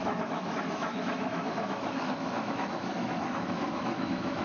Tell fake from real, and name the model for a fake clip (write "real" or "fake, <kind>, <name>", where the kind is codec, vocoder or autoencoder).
fake, autoencoder, DAC-VAE